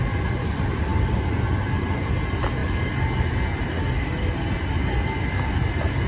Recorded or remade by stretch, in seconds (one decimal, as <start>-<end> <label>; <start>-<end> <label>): 0.0-6.1 recorded